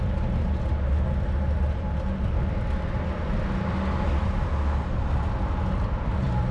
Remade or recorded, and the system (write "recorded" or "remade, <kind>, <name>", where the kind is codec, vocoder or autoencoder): recorded